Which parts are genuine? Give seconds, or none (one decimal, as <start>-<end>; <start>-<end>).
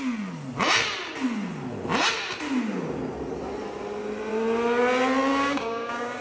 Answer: 0.0-5.3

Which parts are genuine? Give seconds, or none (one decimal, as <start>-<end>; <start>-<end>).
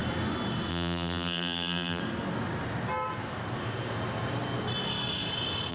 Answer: 0.0-0.7; 2.0-5.7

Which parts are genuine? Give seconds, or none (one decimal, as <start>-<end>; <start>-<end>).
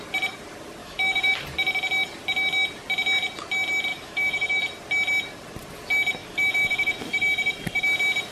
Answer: 0.0-0.8; 1.3-3.9; 4.6-6.2; 7.0-8.3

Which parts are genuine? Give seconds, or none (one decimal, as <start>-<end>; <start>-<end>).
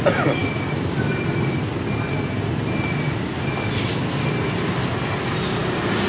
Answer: 0.0-0.4; 1.7-6.1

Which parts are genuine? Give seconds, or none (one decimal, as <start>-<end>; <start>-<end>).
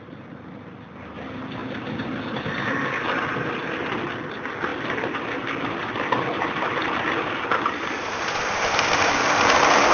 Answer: 0.0-8.0; 9.3-9.9